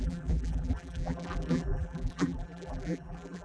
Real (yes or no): no